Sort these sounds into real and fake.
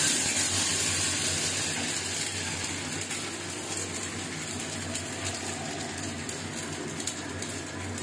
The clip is real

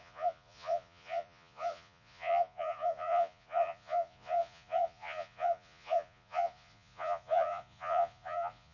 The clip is fake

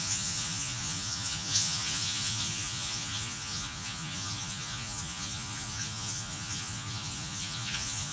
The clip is fake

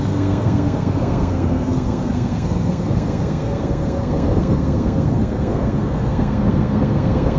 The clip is fake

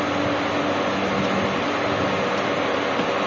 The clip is real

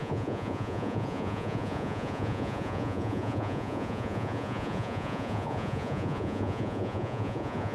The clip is fake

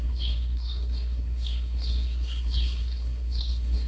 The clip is fake